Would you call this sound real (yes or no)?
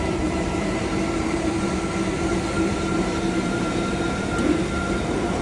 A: no